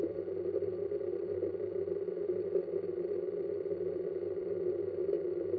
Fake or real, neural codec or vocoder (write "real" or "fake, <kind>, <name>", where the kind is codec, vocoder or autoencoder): fake, vocoder, BigVGAN v2